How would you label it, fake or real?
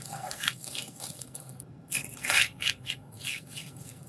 fake